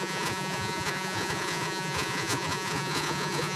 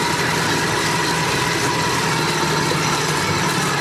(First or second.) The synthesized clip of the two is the first